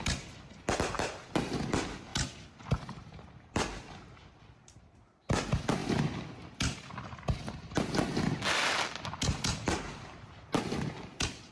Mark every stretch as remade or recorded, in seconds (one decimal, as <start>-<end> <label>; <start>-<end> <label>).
0.0-11.5 recorded